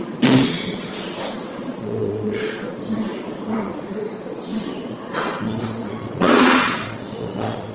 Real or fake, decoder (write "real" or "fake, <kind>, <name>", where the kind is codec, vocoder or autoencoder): fake, vocoder, Vocos